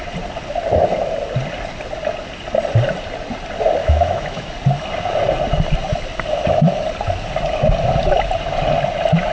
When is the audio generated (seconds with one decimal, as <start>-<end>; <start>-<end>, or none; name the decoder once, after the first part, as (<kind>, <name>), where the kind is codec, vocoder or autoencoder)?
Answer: 3.8-4.5 (autoencoder, DAC-VAE)